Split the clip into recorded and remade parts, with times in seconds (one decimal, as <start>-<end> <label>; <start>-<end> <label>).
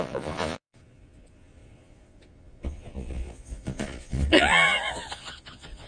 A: 0.0-5.9 remade